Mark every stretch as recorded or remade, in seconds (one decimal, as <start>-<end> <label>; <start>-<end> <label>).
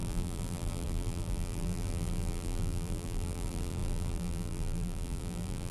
0.0-5.7 remade